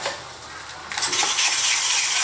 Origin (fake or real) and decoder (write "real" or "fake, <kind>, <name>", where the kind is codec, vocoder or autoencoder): real